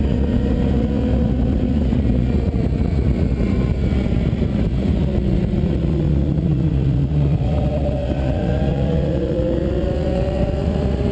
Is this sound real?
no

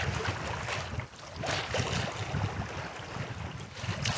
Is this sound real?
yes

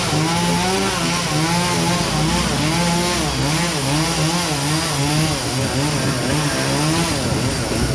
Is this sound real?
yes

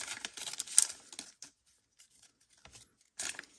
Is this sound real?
yes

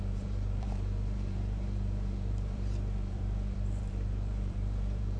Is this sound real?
no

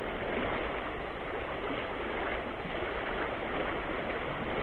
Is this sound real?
yes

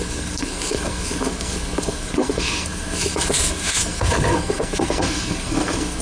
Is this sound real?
no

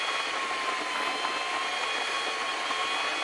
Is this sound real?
yes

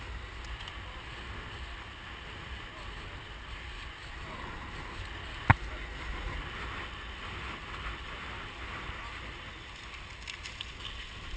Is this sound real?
yes